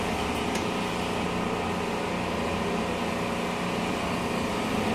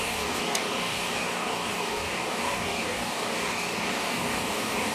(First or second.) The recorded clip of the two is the first